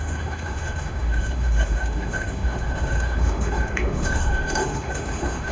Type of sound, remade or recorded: remade